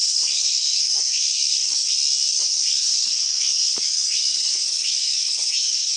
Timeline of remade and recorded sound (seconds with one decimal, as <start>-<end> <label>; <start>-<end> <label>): 0.0-1.9 remade; 1.9-2.3 recorded; 2.3-6.0 remade